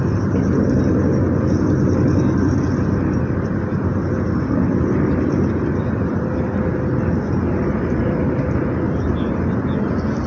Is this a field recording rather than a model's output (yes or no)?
yes